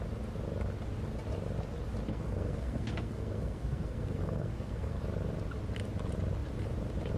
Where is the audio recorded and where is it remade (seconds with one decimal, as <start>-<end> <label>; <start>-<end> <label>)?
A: 0.0-2.1 recorded; 2.1-5.0 remade; 5.0-7.2 recorded